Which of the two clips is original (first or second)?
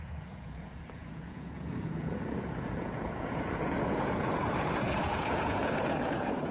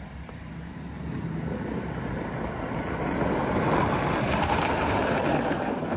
second